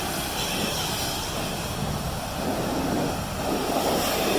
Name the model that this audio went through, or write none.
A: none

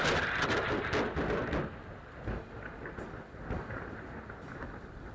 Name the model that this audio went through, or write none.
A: none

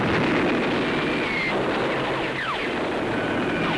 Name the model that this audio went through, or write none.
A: none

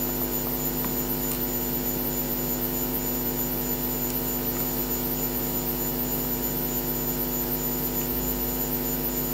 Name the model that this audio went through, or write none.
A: none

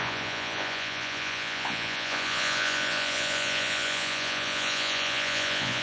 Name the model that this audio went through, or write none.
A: vocoder, Vocos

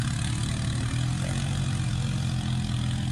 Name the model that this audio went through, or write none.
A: none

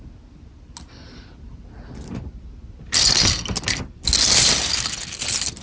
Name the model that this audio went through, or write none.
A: none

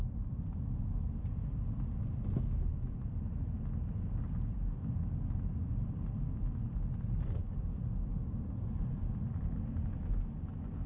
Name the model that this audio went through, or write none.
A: none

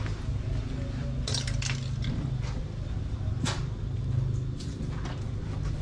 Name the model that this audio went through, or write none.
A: none